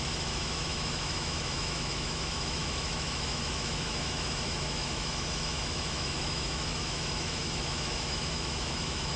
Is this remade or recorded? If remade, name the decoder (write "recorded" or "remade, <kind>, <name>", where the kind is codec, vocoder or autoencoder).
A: remade, autoencoder, DAC-VAE